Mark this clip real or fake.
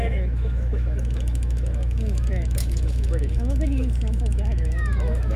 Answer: fake